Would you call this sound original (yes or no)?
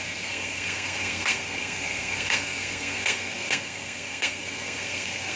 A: no